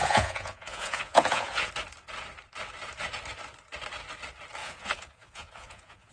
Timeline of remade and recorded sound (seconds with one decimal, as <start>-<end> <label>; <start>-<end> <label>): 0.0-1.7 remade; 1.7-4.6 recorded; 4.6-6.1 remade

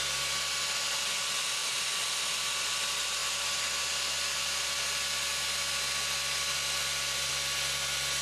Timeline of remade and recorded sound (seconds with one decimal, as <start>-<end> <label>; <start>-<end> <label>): 0.0-1.6 recorded; 1.6-2.4 remade; 2.4-3.2 recorded; 3.2-7.3 remade; 7.3-8.2 recorded

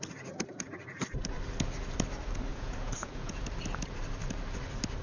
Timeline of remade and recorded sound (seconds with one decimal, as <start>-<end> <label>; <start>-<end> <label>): 0.0-2.5 recorded; 2.5-3.4 remade; 3.4-5.0 recorded